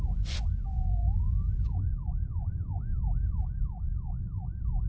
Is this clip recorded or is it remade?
remade